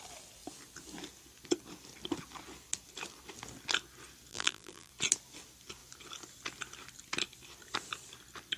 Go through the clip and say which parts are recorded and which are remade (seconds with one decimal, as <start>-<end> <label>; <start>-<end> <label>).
0.0-4.3 recorded; 4.3-4.9 remade; 4.9-8.6 recorded